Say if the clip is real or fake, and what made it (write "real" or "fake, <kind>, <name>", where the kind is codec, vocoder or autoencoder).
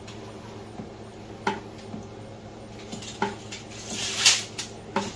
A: real